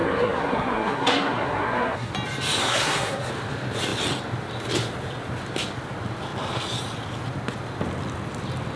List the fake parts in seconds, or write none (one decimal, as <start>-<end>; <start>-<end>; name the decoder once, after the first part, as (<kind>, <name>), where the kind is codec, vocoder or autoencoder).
0.0-2.1 (codec, SNAC); 2.6-3.3